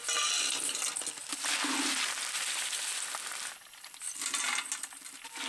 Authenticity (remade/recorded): recorded